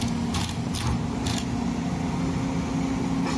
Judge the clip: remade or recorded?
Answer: recorded